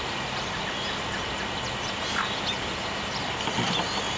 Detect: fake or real real